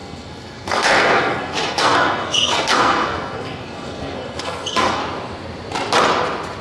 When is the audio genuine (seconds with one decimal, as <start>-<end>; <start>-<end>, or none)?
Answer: 5.0-6.6